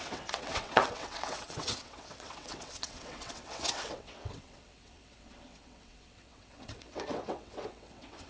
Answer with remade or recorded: remade